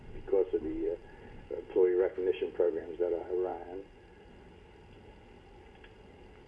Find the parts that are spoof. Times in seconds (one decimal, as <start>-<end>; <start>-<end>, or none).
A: none